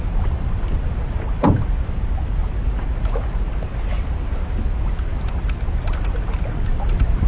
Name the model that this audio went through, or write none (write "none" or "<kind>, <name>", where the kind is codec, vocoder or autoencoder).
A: none